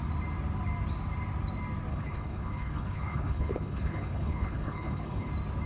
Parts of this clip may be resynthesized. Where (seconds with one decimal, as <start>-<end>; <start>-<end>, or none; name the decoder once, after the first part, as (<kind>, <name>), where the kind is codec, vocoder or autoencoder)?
1.9-5.3 (codec, HILCodec)